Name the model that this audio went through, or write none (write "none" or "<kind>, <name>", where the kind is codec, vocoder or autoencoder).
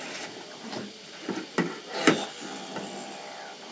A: none